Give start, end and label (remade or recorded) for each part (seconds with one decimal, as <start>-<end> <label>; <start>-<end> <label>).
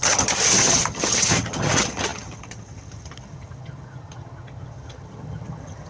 0.0-5.9 remade